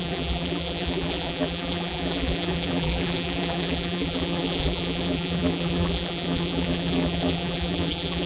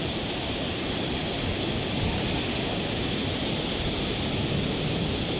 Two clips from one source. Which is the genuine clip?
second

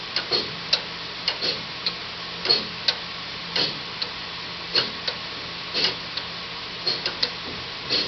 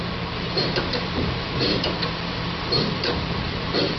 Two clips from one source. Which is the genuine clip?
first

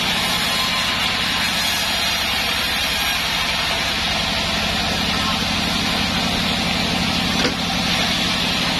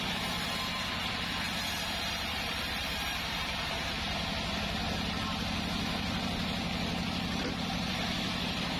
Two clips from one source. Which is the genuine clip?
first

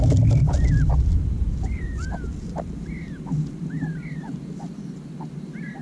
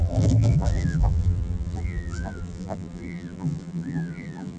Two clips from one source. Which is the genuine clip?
first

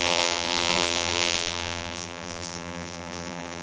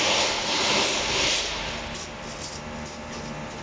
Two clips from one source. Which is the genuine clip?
second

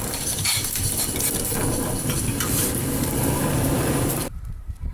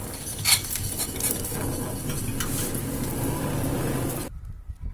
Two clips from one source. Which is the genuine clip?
second